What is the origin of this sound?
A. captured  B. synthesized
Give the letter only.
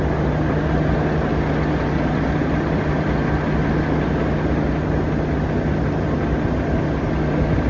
A